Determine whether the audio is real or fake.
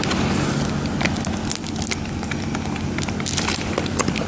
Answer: real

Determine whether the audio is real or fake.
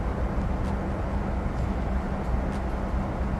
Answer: real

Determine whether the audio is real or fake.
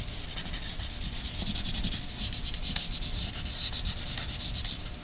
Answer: real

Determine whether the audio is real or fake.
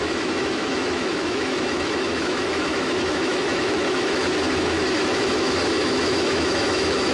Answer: fake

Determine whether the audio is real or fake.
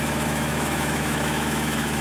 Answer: fake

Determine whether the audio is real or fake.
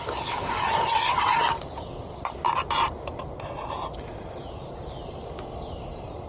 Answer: real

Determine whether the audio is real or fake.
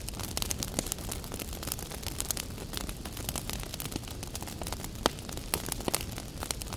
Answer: real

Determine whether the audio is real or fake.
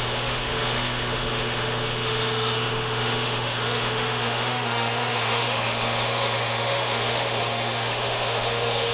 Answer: fake